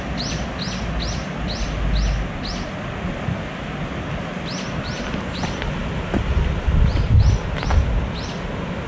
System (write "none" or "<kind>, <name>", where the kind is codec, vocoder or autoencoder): none